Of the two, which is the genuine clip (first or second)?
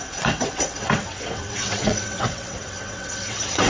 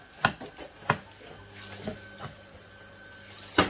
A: second